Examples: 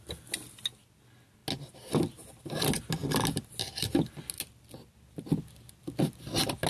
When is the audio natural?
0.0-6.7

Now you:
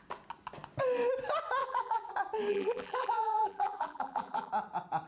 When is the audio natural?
0.0-1.6; 2.1-2.5; 4.5-5.1

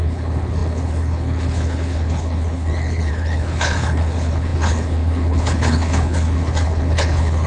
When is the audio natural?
none

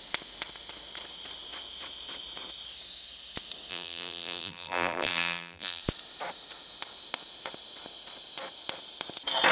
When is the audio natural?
0.0-3.7; 5.8-9.5

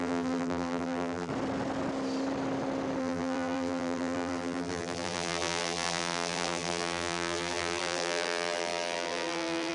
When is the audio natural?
1.3-3.0

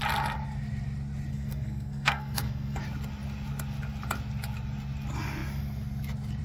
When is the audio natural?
0.0-1.3; 2.8-6.4

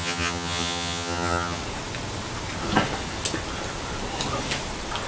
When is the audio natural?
1.6-5.1